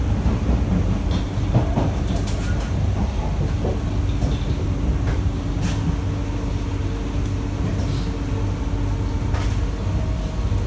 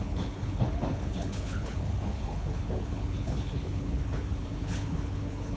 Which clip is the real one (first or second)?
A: first